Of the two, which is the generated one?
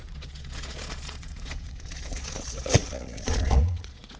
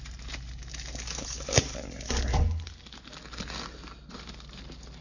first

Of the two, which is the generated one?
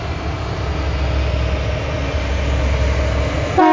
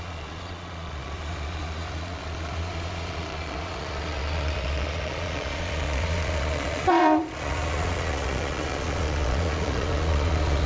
second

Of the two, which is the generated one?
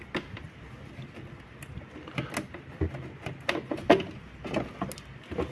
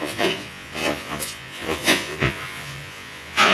second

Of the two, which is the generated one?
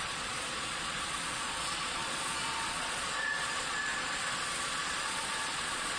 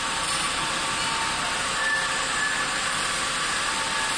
first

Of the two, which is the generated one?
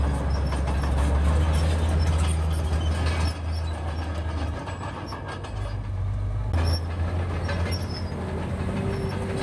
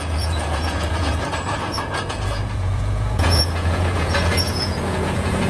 second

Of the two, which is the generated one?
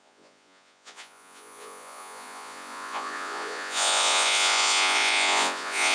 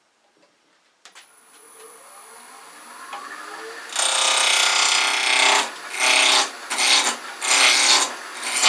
first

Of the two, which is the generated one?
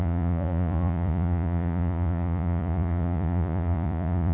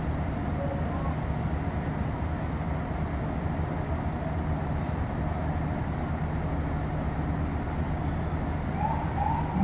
first